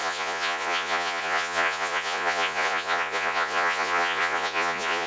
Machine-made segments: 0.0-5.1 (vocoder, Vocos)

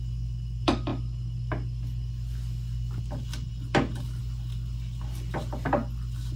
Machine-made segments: none

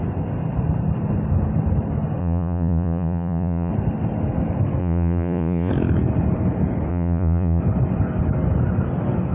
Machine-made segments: 2.2-3.7 (vocoder, Vocos); 4.8-5.7; 6.9-7.6

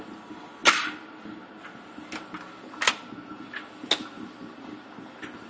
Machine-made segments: none

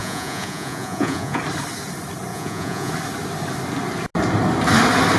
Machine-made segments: 0.0-1.4 (vocoder, Vocos); 2.3-2.9

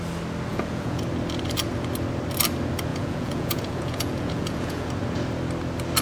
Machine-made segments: 0.5-1.0 (vocoder, Vocos); 2.9-4.9

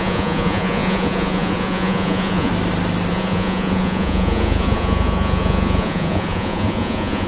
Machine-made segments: 0.0-2.5 (vocoder, Vocos); 3.1-7.3

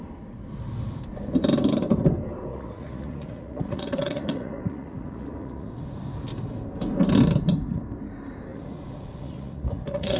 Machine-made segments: 2.5-5.7 (vocoder, Vocos); 8.5-10.2